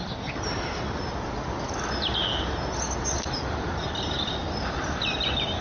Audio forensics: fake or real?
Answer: real